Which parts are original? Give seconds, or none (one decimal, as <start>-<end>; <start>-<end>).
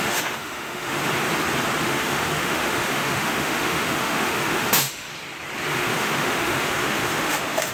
1.0-1.8; 5.1-5.7